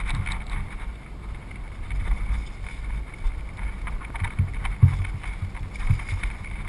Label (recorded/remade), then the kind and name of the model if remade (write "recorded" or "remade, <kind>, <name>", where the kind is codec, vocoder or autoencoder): recorded